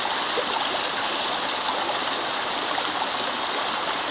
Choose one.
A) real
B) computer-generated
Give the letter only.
A